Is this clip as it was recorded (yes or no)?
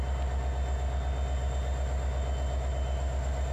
yes